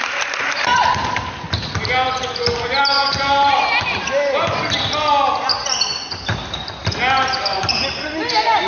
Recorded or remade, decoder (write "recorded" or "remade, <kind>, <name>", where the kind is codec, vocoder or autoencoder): recorded